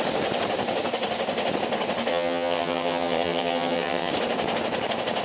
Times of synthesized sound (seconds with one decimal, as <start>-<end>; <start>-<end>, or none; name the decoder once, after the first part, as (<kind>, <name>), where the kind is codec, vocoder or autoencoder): 2.1-4.1 (vocoder, HiFi-GAN)